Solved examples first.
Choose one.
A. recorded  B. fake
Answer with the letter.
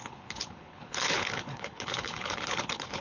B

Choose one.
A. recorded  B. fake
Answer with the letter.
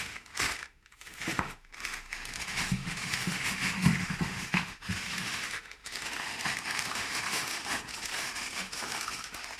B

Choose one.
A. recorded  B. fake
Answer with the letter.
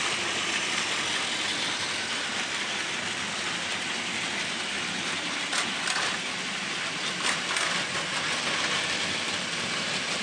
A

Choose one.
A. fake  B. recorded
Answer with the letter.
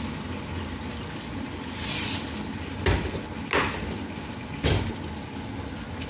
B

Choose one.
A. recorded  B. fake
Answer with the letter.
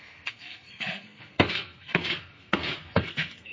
B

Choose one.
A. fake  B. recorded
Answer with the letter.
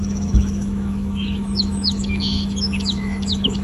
A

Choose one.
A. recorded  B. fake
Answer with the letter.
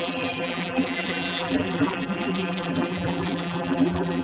B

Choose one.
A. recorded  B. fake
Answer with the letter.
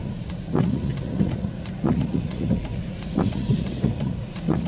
B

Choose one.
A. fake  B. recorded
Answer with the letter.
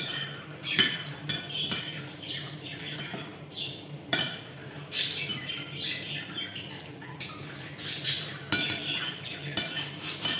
A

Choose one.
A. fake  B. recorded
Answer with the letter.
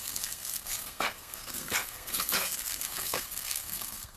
A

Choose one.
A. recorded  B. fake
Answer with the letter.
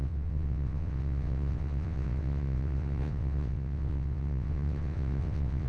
B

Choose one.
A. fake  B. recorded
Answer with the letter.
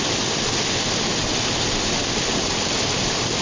B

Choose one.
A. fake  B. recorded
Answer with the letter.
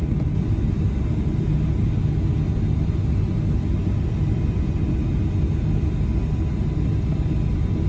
B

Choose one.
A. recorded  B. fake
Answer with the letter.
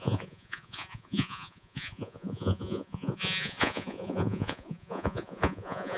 B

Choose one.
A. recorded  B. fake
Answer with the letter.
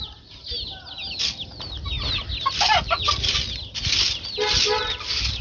A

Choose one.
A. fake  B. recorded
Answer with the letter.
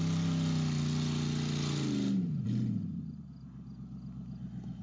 B